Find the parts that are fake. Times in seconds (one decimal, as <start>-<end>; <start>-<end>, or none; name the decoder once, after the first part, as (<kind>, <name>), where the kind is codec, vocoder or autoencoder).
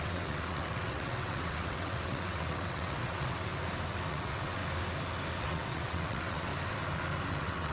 0.0-3.5 (vocoder, WaveNeXt); 4.1-4.6; 5.3-6.5; 7.3-7.7